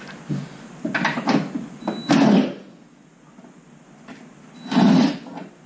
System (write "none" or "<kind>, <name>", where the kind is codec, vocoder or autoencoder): none